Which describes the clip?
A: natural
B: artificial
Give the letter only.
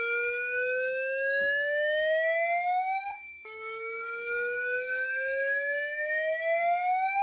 B